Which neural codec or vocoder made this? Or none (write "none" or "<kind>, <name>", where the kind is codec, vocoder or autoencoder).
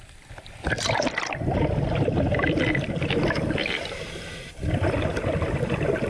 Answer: none